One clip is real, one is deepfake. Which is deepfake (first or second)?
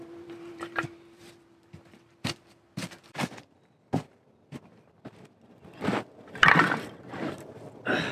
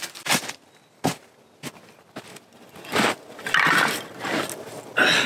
first